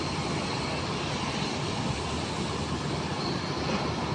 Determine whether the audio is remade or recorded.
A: recorded